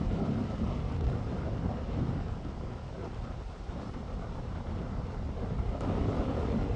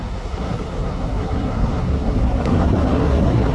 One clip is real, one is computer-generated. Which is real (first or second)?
first